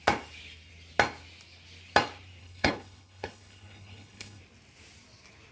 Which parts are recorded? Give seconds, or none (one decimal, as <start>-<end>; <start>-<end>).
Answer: 0.0-2.4; 4.4-5.5